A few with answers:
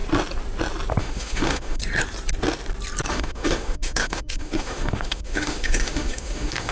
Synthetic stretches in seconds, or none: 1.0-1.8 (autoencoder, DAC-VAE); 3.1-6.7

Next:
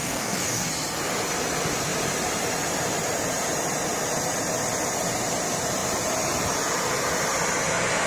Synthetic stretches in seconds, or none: 0.0-0.7 (codec, DAC)

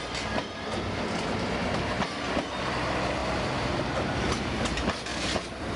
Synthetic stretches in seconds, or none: 1.6-2.3 (vocoder, BigVGAN v2); 3.2-4.3; 5.1-5.8

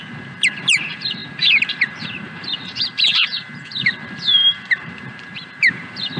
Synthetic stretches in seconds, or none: 0.0-6.2 (vocoder, BigVGAN v2)

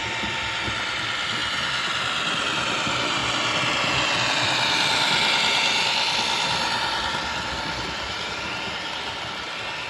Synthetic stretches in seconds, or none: 0.0-3.2 (vocoder, BigVGAN v2); 4.3-9.9

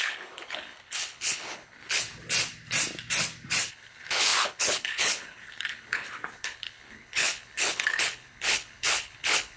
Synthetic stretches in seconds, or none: 0.0-2.0 (codec, HILCodec); 3.7-9.6